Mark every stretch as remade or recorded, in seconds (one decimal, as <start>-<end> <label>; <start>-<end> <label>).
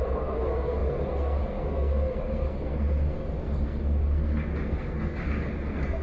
0.0-6.0 remade